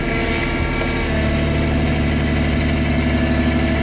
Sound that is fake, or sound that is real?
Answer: real